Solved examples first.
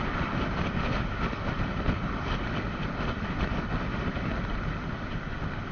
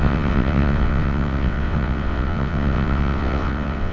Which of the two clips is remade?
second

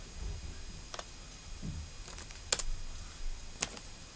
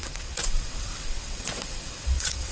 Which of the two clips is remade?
second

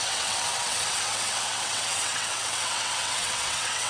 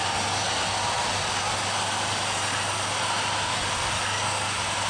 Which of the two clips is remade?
first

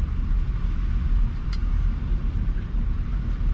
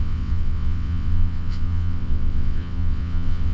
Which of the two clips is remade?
second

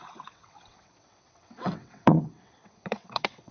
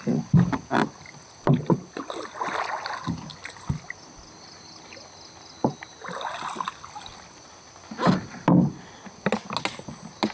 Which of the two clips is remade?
first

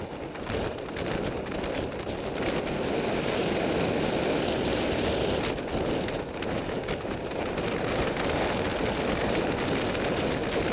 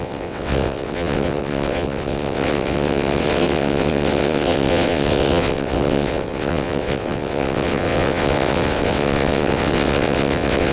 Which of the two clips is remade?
second